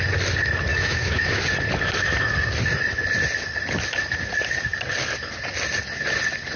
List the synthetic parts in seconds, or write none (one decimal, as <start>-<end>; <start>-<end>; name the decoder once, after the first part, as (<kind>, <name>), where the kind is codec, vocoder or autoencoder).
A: 0.7-1.4 (autoencoder, DAC-VAE)